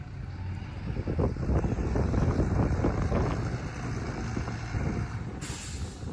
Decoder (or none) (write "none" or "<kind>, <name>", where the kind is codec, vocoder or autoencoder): none